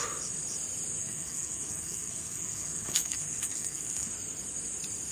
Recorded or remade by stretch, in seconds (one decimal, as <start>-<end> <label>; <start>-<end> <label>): 0.0-1.0 recorded; 1.0-4.1 remade; 4.1-5.1 recorded